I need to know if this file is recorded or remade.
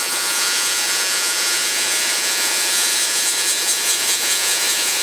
remade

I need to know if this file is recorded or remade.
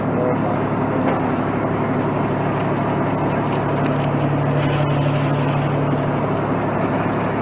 recorded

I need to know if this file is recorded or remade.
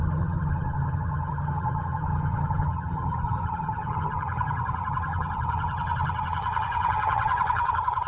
remade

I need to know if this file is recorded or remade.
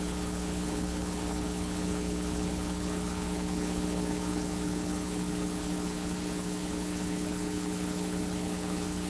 remade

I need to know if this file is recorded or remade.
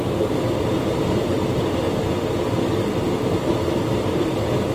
remade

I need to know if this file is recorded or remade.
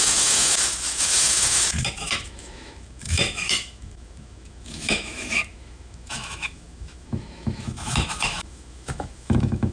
remade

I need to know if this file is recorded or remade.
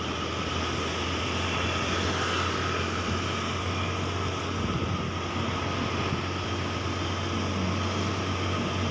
recorded